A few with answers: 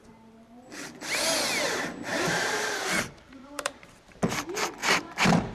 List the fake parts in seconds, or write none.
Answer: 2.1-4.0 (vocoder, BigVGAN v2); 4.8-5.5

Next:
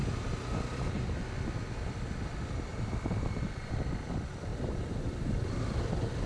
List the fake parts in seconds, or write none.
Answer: 2.7-3.7 (vocoder, BigVGAN v2)